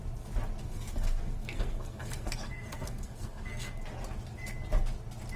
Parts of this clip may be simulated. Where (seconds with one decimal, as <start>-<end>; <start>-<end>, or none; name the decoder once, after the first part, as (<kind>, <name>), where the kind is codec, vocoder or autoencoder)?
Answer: 0.6-3.8 (codec, SNAC)